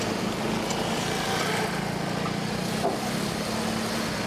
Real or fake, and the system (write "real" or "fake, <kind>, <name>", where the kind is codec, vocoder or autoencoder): real